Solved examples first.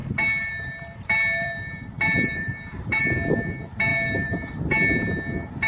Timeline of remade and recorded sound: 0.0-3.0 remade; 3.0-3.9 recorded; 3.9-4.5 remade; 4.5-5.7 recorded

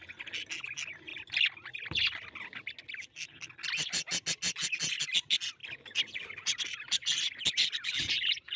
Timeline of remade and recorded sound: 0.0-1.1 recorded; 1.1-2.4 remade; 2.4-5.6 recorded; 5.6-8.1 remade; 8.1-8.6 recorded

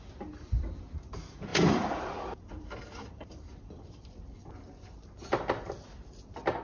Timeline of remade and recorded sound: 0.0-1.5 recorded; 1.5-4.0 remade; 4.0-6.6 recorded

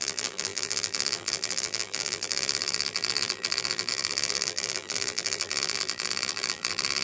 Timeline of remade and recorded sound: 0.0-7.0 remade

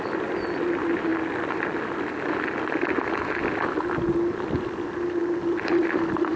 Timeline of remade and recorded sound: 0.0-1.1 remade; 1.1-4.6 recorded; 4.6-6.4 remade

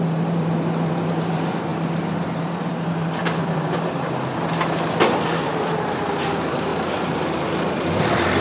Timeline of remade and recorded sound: 0.0-1.7 remade; 1.7-2.4 recorded; 2.4-3.4 remade; 3.4-5.5 recorded; 5.5-8.4 remade